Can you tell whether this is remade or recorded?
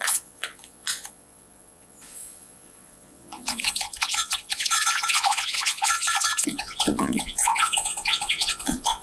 remade